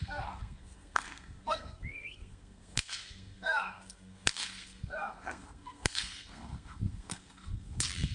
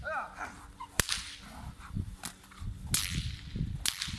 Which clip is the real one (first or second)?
second